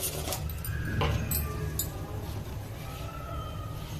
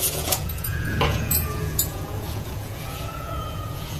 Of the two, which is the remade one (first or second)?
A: second